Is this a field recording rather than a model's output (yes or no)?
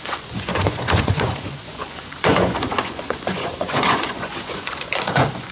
no